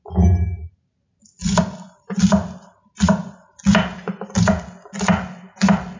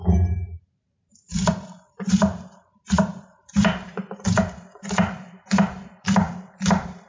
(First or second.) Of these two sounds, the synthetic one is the second